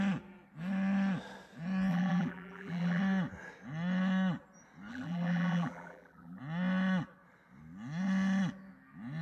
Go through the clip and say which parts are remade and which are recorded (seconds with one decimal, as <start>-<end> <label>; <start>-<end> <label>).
0.0-1.9 recorded; 1.9-3.0 remade; 3.0-4.9 recorded; 4.9-6.4 remade; 6.4-9.2 recorded